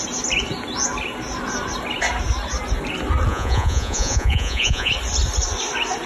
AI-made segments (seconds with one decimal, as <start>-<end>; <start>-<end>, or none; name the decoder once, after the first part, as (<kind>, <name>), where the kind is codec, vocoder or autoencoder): 3.3-4.9 (vocoder, Vocos)